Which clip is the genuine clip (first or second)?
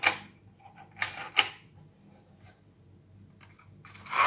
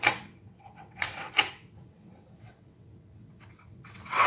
first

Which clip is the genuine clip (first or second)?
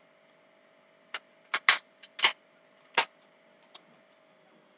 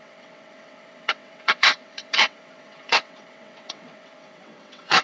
first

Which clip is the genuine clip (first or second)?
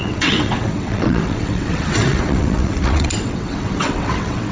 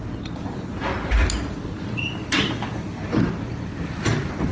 second